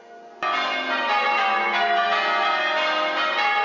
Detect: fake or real real